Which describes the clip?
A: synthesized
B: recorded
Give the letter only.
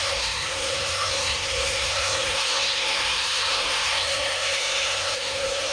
A